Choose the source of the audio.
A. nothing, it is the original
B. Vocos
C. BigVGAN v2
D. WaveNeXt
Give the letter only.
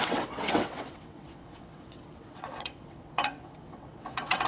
D